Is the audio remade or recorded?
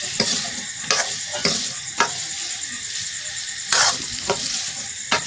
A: remade